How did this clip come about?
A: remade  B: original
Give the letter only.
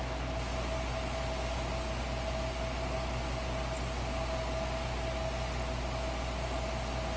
B